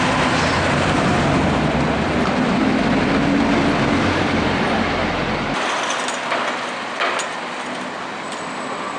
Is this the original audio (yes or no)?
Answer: yes